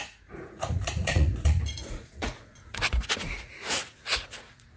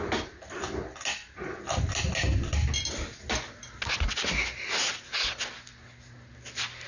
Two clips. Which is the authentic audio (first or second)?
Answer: second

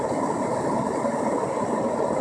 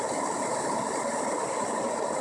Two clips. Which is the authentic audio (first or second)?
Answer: first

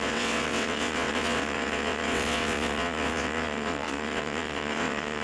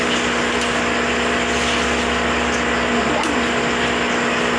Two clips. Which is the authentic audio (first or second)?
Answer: second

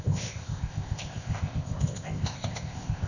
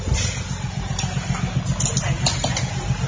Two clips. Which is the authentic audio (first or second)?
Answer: second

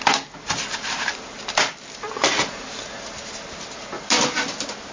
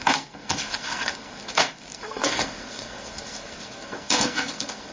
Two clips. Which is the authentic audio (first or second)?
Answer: first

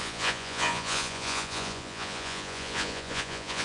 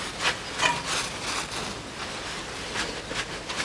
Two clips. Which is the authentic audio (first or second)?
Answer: second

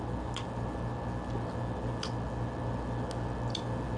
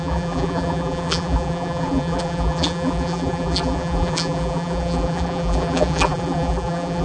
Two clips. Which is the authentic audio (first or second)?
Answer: first